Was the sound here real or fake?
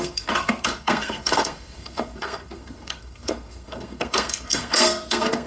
fake